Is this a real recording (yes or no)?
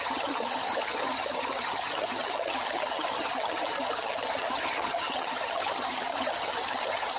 no